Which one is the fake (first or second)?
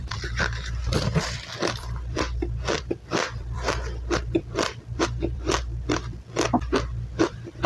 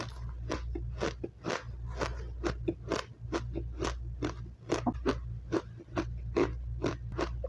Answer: first